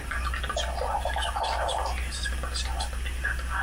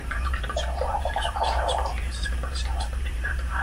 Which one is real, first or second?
first